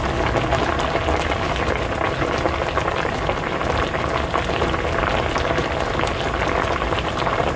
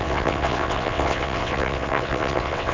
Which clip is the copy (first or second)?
second